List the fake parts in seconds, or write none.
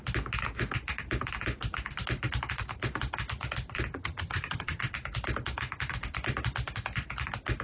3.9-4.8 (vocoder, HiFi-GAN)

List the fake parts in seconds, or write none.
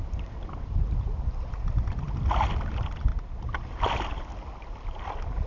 none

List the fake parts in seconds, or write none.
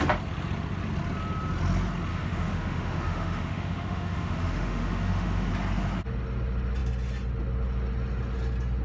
2.1-5.5 (autoencoder, DAC-VAE)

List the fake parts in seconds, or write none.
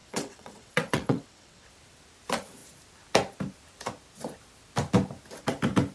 0.0-1.7 (vocoder, WaveNeXt)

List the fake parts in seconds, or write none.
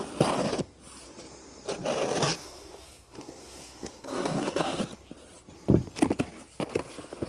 2.4-4.8 (codec, SNAC)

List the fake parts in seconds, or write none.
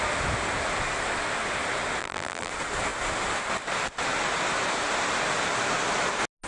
2.0-2.5 (vocoder, BigVGAN v2)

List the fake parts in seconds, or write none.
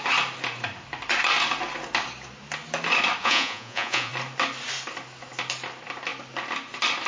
3.2-4.1 (vocoder, Vocos)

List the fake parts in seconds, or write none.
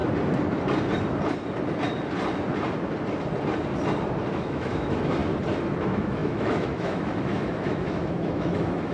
4.3-5.2 (autoencoder, DAC-VAE); 5.8-8.9